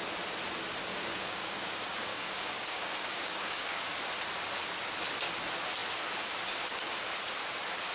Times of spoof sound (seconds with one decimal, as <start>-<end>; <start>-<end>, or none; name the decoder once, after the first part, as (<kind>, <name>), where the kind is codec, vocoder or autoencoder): 0.9-1.7 (codec, DAC); 2.1-4.0